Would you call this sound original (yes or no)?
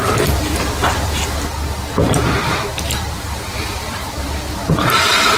no